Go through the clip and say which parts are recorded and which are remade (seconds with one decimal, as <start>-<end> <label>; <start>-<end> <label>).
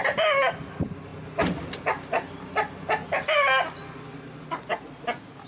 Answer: 0.0-5.5 recorded